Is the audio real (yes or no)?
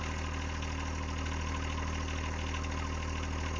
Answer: yes